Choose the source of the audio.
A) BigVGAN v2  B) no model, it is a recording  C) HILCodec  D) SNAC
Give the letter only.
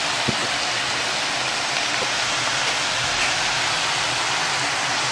A